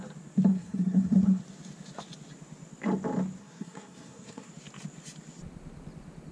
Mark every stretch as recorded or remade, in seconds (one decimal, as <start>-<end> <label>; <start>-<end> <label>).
0.0-0.5 recorded; 0.5-1.4 remade; 1.4-3.4 recorded; 3.4-4.5 remade; 4.5-6.3 recorded